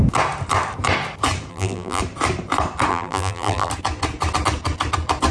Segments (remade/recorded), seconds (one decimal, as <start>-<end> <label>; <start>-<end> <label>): 0.0-1.5 recorded; 1.5-2.0 remade; 2.0-2.9 recorded; 2.9-3.7 remade; 3.7-5.3 recorded